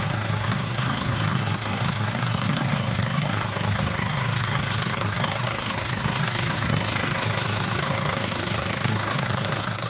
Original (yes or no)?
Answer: no